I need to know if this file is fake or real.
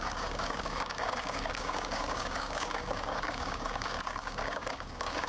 fake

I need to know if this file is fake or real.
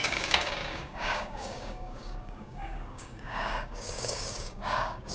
fake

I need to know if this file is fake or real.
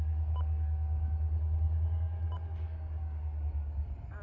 fake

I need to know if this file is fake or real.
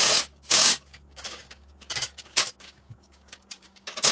fake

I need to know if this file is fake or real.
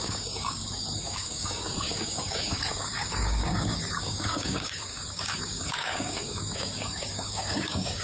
fake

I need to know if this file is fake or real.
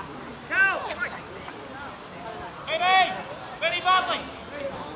real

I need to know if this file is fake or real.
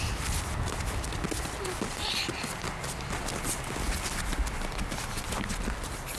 real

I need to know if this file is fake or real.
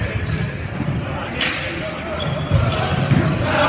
real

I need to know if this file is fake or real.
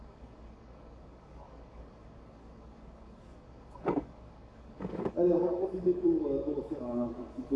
fake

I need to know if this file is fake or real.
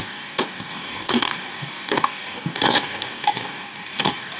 fake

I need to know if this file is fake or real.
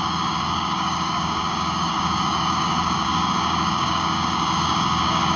fake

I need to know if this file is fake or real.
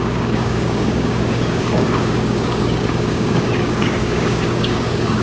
fake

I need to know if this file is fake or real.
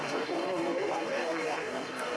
fake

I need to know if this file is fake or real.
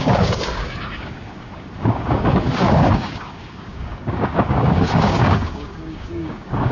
fake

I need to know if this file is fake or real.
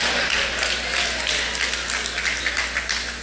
real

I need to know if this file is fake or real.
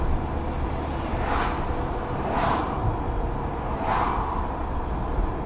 real